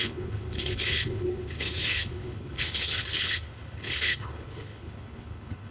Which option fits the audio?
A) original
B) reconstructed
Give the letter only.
B